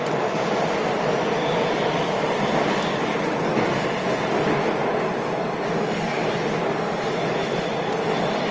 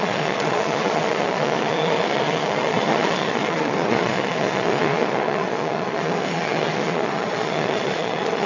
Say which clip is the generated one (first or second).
second